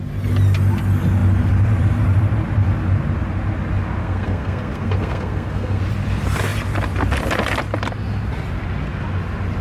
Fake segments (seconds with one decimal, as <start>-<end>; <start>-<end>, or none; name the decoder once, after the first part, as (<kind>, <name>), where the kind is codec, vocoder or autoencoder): 4.0-5.8 (codec, SNAC)